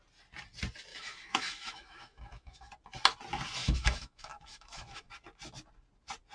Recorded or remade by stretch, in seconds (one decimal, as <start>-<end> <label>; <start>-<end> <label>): 0.0-0.9 recorded; 0.9-2.7 remade; 2.7-3.6 recorded; 3.6-5.1 remade; 5.1-6.3 recorded